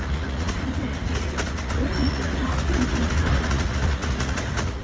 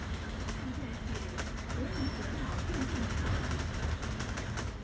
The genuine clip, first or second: second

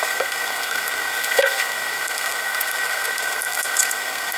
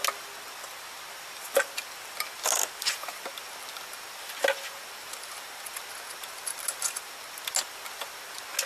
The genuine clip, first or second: second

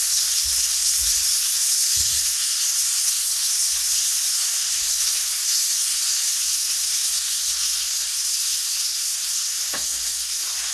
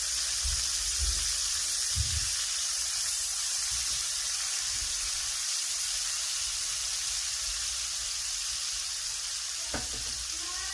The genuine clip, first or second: second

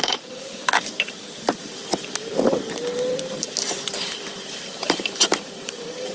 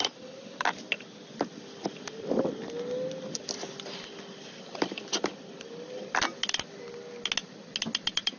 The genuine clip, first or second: second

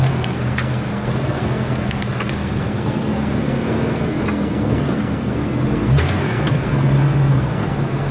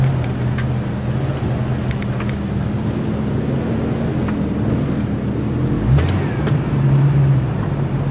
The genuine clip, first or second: second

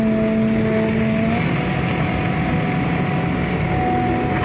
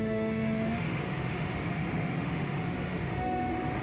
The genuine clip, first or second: first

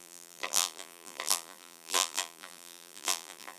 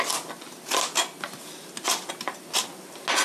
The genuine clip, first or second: second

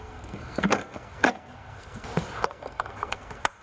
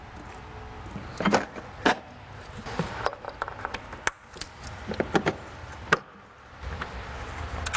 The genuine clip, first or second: second